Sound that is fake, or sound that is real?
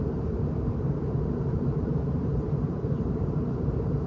fake